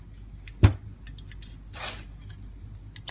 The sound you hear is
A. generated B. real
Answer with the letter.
B